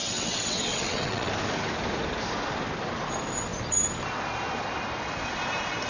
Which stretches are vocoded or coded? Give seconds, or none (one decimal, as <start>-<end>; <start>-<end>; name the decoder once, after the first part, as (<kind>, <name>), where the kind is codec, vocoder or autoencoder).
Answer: 0.0-1.3 (vocoder, WaveNeXt)